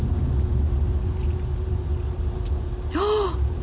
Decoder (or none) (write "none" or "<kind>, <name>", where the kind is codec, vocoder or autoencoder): none